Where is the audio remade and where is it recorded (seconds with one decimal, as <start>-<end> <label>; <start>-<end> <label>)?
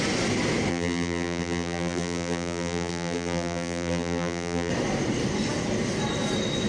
0.0-0.7 recorded; 0.7-4.7 remade; 4.7-6.7 recorded